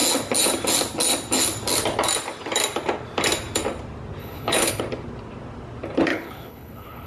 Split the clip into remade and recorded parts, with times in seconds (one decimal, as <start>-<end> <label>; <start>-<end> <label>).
0.0-4.2 recorded; 4.2-4.8 remade; 4.8-6.1 recorded; 6.1-7.1 remade